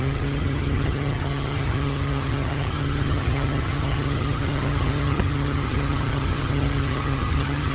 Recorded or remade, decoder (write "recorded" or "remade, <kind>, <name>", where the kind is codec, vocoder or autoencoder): remade, vocoder, HiFi-GAN